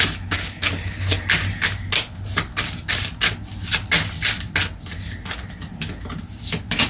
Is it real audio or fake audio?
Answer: real